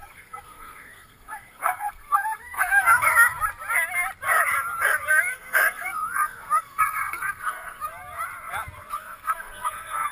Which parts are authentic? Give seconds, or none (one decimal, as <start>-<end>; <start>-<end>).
3.1-5.1; 7.9-8.9